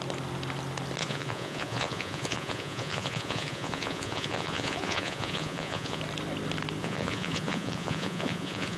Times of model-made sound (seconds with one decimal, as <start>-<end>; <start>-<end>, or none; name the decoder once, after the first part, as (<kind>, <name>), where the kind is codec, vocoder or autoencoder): 1.0-6.0 (vocoder, Vocos); 6.8-8.8